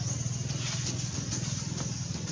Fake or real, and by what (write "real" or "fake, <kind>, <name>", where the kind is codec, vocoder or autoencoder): real